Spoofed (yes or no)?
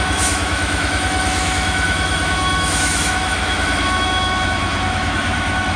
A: yes